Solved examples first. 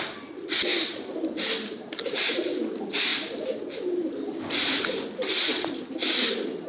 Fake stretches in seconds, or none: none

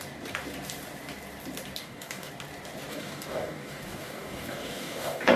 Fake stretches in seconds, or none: 1.8-2.3 (codec, DAC); 2.9-5.4

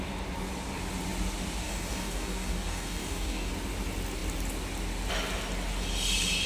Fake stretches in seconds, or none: 1.6-3.5 (codec, DAC)